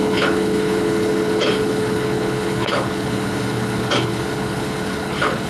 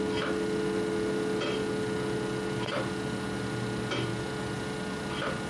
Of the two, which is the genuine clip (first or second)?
second